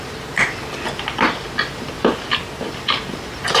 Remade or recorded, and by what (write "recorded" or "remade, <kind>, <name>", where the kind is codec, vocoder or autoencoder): recorded